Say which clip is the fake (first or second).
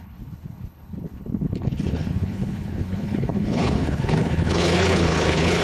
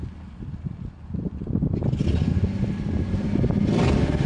first